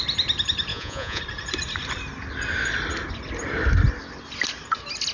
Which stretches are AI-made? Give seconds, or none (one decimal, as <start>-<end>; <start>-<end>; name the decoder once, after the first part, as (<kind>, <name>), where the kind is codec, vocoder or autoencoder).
0.7-1.2 (vocoder, Vocos)

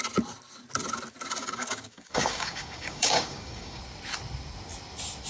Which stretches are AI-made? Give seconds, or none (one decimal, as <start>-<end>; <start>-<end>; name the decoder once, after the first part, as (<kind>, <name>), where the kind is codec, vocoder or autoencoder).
1.4-3.8 (codec, DAC)

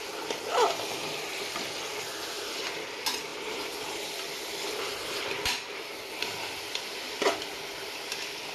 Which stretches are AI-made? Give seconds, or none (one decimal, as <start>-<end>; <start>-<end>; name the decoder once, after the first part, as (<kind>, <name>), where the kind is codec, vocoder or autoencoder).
3.3-3.8 (vocoder, BigVGAN v2)

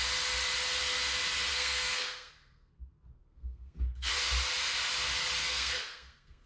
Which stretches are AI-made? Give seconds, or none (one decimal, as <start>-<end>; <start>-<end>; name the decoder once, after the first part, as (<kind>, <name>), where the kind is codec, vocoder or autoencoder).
1.5-4.1 (codec, SNAC); 5.4-6.5

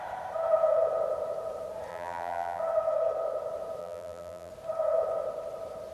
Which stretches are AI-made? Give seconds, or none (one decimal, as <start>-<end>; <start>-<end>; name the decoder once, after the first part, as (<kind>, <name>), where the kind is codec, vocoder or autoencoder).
1.9-2.6 (vocoder, BigVGAN v2); 3.8-4.5